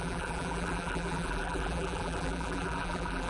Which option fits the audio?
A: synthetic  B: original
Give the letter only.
A